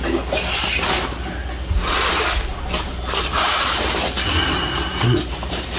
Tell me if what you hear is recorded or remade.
recorded